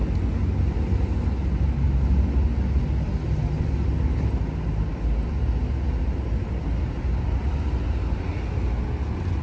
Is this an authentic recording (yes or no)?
yes